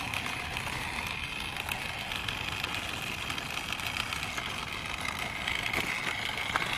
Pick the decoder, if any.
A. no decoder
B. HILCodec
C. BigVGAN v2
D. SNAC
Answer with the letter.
A